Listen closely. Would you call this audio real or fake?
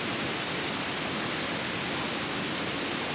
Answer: real